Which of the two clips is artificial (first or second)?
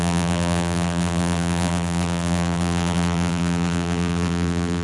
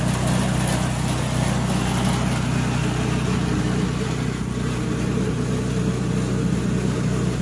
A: first